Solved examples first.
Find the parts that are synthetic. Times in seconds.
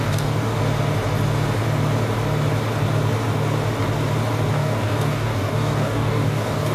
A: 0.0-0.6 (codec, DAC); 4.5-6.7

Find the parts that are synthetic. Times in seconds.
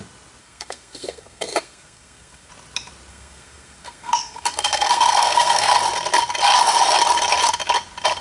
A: 0.4-2.5 (codec, SNAC); 3.1-5.7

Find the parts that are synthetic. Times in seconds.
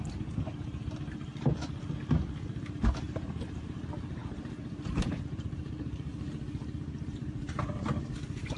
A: 0.0-1.3 (vocoder, BigVGAN v2); 2.7-6.1; 6.7-8.6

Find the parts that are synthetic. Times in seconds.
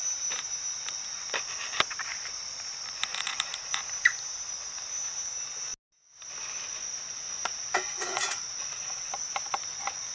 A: 3.1-3.8 (vocoder, Vocos); 7.9-9.1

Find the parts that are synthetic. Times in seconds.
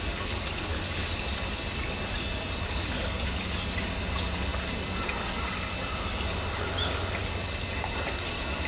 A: none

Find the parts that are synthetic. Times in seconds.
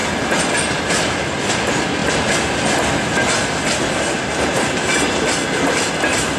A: none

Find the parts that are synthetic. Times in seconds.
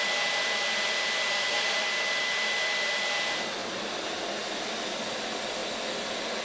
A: none